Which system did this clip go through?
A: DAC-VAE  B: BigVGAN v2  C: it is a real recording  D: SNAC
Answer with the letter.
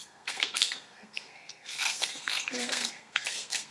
D